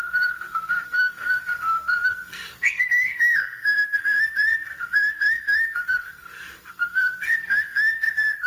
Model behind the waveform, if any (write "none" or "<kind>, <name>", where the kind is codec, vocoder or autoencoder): codec, SNAC